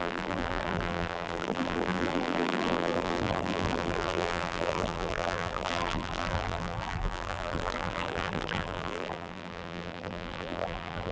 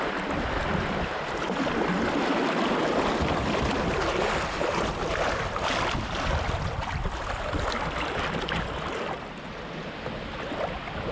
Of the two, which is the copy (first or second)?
first